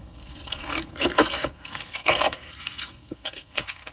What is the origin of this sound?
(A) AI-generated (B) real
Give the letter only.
A